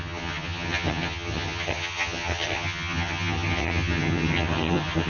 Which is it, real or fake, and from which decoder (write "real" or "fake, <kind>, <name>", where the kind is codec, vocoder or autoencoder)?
fake, vocoder, HiFi-GAN